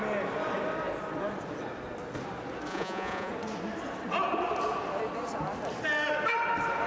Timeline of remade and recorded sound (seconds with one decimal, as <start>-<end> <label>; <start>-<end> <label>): 0.0-2.7 recorded; 2.7-3.3 remade; 3.3-6.9 recorded